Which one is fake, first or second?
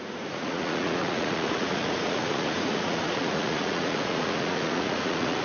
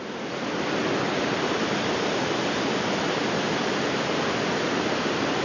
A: first